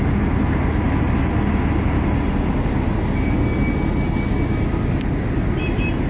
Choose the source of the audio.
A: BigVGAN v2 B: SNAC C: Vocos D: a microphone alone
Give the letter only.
D